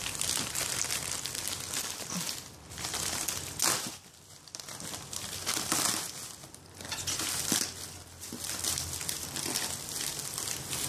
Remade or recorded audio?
recorded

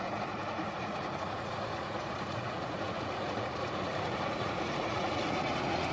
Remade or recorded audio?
remade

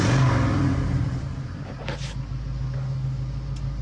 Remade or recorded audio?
recorded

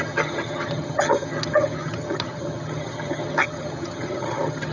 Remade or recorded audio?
remade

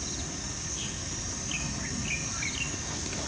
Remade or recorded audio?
recorded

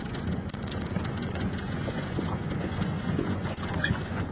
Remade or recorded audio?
remade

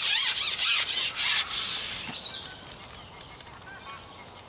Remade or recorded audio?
recorded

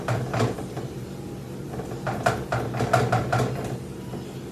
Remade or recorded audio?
recorded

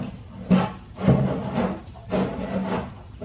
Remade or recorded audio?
recorded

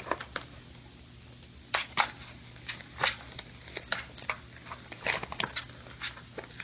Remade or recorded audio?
recorded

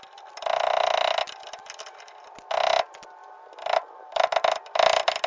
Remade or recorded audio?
recorded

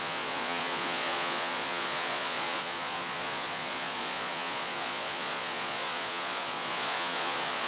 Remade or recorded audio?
remade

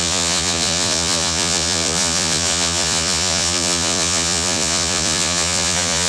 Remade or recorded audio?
remade